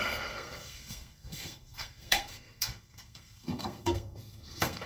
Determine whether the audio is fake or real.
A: fake